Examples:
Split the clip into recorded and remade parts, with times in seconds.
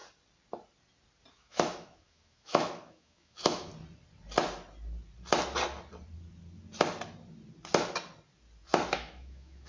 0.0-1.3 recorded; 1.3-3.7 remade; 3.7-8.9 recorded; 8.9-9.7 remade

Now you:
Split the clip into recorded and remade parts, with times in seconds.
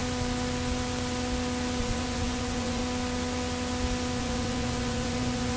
0.0-1.8 recorded; 1.8-2.8 remade; 2.8-4.2 recorded; 4.2-5.6 remade